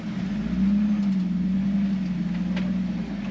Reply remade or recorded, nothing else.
recorded